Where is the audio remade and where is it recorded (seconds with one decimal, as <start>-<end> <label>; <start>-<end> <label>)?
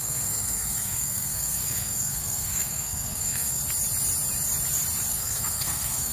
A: 0.0-3.6 remade; 3.6-5.1 recorded; 5.1-6.1 remade